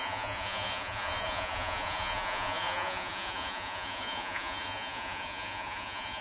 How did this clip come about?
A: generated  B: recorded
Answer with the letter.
A